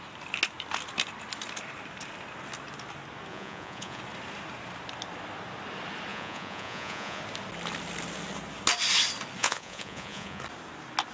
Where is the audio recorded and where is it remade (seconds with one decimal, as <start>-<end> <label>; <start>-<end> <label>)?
0.0-3.3 recorded; 3.3-4.0 remade; 4.0-6.1 recorded; 6.1-7.2 remade; 7.2-9.4 recorded; 9.4-10.4 remade; 10.4-11.1 recorded